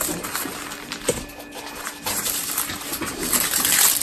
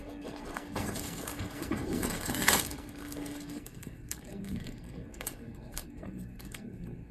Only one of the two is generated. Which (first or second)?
second